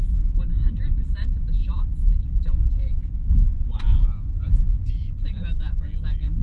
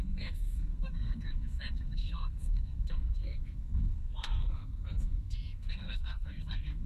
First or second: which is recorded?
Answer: first